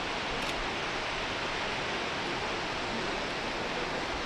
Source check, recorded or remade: recorded